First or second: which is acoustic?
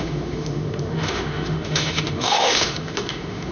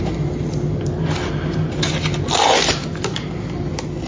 second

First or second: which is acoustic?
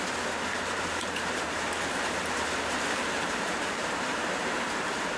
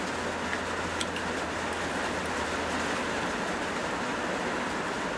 second